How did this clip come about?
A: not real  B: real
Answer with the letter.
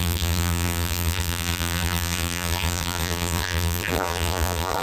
A